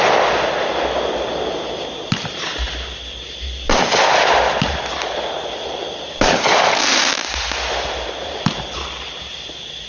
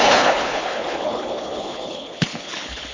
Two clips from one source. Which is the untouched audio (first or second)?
first